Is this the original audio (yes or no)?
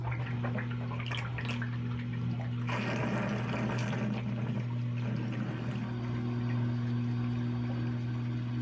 yes